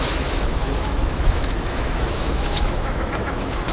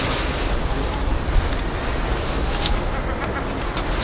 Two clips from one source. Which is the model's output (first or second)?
first